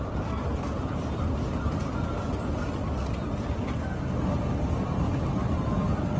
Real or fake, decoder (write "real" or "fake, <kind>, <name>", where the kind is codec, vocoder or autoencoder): real